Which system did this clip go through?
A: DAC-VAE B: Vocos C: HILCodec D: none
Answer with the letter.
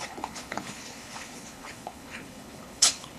C